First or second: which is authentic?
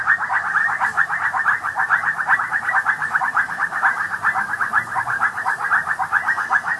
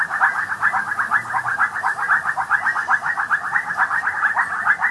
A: second